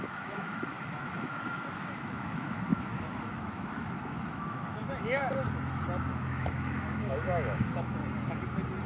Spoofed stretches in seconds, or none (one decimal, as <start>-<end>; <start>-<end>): 0.0-5.2; 6.0-8.0